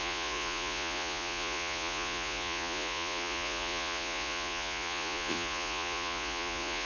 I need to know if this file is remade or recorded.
remade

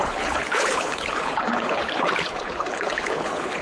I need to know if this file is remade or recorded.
remade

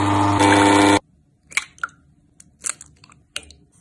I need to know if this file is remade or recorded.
recorded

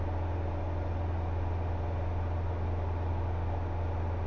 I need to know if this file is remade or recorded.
recorded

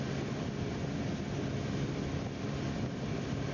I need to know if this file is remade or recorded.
recorded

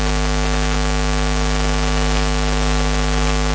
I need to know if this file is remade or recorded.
recorded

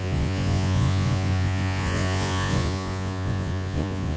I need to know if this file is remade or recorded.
remade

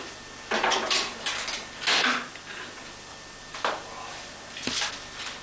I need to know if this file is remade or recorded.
recorded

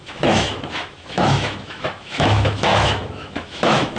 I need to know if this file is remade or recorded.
remade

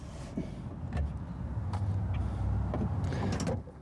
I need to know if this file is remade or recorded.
recorded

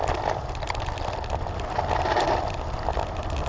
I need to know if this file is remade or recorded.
recorded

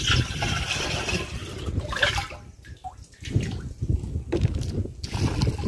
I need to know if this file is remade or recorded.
recorded